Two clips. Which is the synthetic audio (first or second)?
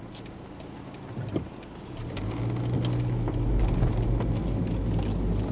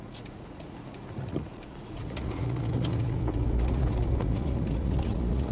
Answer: second